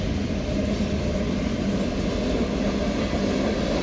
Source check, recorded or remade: recorded